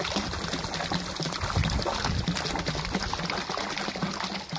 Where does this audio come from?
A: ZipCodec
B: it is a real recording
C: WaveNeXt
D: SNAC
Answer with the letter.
B